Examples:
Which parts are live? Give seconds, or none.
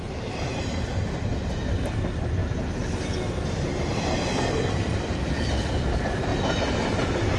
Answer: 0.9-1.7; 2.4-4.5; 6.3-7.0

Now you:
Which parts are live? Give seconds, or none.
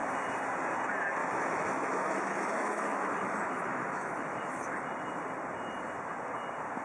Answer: 0.0-1.2; 4.7-6.8